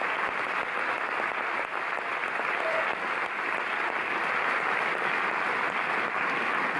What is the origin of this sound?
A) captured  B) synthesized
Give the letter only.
A